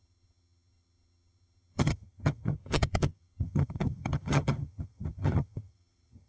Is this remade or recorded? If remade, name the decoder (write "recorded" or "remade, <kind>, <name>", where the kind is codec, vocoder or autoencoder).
remade, vocoder, HiFi-GAN